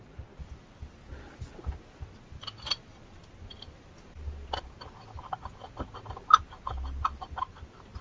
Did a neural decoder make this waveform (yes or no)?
no